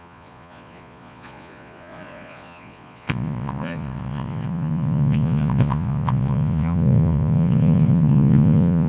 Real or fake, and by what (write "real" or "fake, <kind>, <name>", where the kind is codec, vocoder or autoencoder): fake, vocoder, Vocos